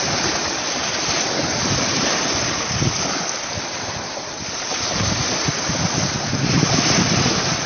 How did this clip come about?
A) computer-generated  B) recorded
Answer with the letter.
B